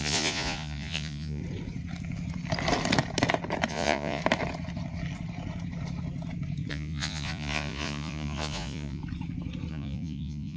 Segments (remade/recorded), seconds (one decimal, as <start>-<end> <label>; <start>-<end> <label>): 0.0-1.4 remade; 1.4-3.7 recorded; 3.7-4.2 remade; 4.2-6.7 recorded; 6.7-9.0 remade; 9.0-9.7 recorded; 9.7-10.6 remade